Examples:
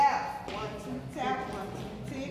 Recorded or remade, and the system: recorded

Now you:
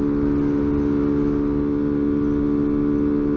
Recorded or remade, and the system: recorded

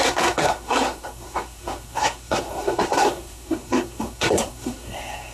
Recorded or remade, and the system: remade, codec, SNAC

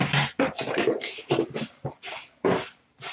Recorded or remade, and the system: recorded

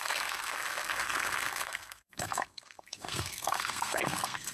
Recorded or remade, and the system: remade, codec, SNAC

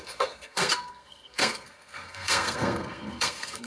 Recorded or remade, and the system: remade, codec, SNAC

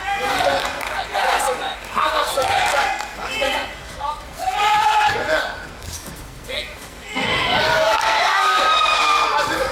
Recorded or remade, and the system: remade, codec, SNAC